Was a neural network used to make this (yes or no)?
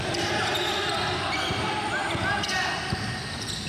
no